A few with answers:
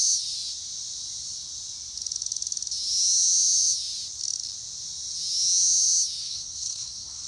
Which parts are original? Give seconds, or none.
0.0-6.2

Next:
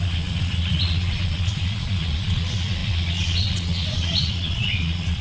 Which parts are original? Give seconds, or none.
none

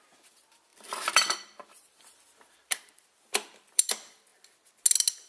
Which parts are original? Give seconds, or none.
0.0-0.7; 3.9-5.3

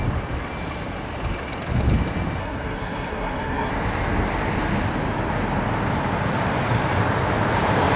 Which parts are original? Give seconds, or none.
0.0-2.4; 3.7-8.0

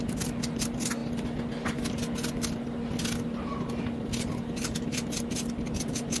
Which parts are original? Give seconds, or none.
0.0-6.2

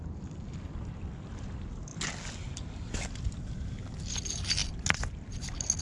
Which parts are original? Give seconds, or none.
0.0-5.8